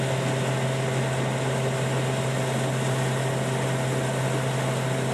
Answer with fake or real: real